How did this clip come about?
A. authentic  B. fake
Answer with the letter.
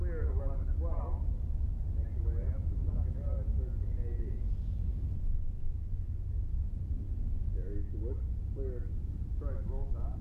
A